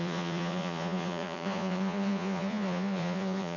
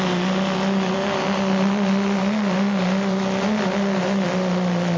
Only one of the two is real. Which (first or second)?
second